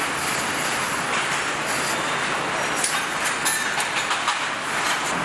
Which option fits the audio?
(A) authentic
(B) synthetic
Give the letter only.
A